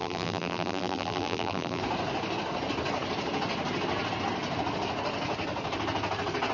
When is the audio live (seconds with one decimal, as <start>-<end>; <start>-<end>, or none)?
1.8-6.5